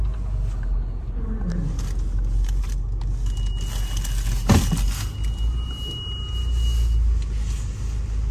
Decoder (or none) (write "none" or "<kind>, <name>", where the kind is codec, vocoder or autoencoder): none